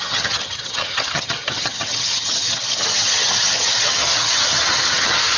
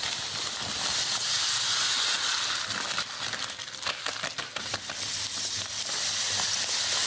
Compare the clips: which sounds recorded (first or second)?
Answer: second